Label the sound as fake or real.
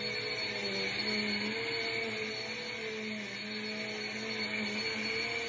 real